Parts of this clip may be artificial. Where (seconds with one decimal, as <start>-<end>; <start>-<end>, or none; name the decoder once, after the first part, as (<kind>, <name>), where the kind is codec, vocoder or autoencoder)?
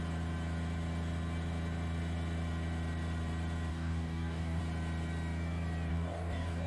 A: 3.7-4.6 (codec, DAC); 5.9-6.7